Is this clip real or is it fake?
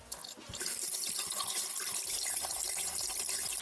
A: real